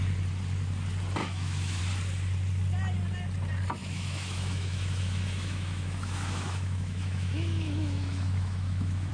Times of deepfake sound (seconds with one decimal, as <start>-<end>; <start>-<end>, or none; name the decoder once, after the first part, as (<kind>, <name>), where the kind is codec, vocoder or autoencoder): 1.2-1.8 (autoencoder, DAC-VAE); 3.8-9.1